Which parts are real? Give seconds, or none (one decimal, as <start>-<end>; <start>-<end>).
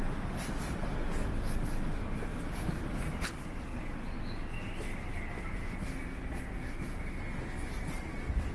0.0-2.3; 2.8-8.5